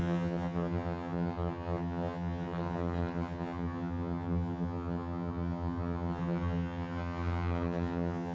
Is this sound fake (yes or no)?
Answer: yes